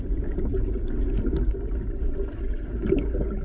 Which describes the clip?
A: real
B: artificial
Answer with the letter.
A